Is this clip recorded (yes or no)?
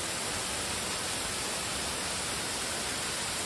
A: yes